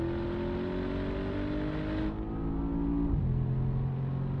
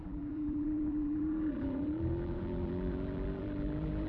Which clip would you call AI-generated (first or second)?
second